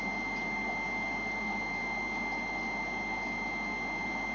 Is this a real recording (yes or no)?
yes